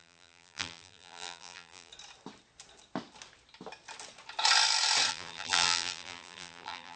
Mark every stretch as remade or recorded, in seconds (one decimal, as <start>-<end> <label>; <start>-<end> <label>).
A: 0.0-1.9 remade; 1.9-5.1 recorded; 5.1-7.0 remade